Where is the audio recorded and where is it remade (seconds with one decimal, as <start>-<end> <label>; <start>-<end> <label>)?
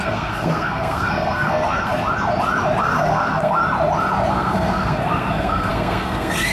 0.0-1.9 remade; 1.9-2.8 recorded; 2.8-3.6 remade; 3.6-4.3 recorded; 4.3-6.5 remade